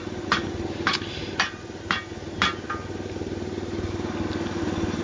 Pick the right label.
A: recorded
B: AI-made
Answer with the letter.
A